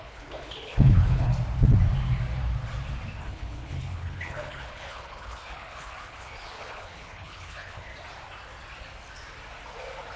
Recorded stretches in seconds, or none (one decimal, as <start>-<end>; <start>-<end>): 1.3-3.2; 7.9-10.2